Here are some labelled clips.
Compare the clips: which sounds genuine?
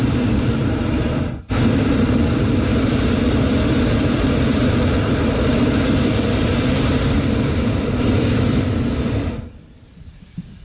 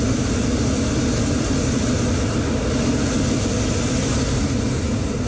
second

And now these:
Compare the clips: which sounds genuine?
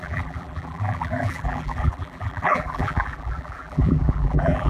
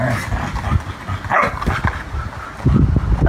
second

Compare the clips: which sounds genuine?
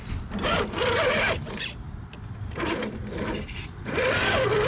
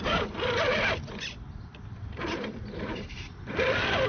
first